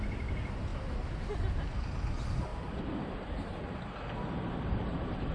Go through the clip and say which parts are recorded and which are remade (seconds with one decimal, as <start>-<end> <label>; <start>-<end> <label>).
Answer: 0.0-2.5 recorded; 2.5-3.6 remade; 3.6-5.3 recorded

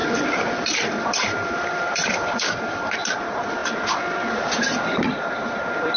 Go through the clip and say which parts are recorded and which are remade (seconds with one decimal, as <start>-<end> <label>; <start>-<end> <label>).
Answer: 0.0-2.4 remade; 2.4-6.0 recorded

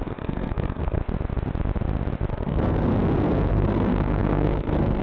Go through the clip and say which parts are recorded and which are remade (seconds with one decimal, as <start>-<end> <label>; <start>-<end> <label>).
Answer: 0.0-1.0 remade; 1.0-2.3 recorded; 2.3-2.9 remade; 2.9-3.5 recorded; 3.5-5.0 remade

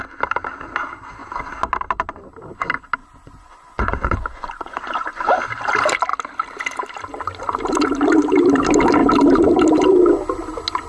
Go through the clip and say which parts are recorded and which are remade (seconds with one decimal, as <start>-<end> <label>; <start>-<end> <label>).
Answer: 0.0-3.0 recorded; 3.0-5.3 remade; 5.3-10.9 recorded